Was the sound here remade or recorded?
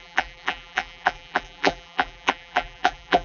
remade